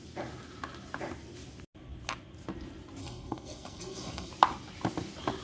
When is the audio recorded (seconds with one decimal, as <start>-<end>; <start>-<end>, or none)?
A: 0.0-3.0; 4.3-5.4